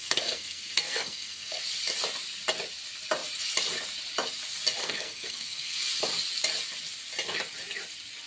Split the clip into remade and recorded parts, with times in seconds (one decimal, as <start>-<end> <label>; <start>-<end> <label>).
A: 0.0-1.6 remade; 1.6-4.8 recorded; 4.8-5.9 remade; 5.9-8.3 recorded